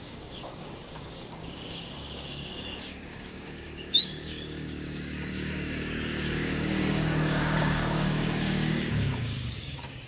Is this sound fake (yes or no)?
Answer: yes